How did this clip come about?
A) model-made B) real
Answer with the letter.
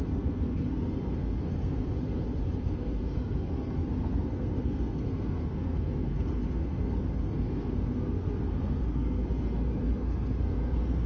A